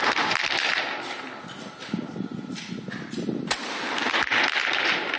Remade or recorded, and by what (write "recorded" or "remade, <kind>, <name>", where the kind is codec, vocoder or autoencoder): recorded